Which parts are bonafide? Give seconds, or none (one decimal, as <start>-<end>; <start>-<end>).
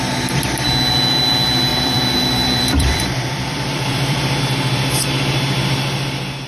0.0-1.7; 4.4-6.5